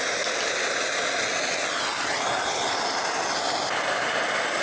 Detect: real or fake real